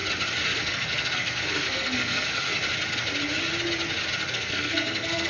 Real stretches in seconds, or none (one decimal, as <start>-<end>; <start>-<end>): 0.0-0.6; 2.5-4.3